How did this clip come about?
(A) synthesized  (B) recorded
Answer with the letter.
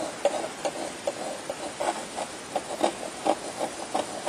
B